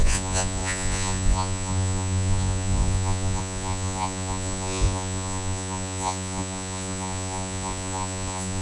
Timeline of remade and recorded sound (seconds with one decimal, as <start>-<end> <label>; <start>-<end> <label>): 0.0-8.6 remade